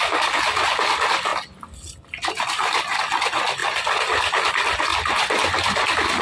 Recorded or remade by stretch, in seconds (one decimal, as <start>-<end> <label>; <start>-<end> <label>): 0.0-6.2 recorded